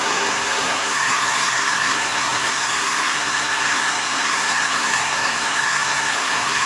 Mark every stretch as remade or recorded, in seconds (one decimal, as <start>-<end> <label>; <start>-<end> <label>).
0.0-6.7 remade